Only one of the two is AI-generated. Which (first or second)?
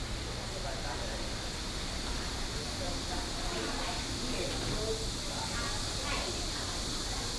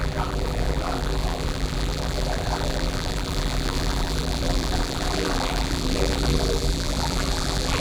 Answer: second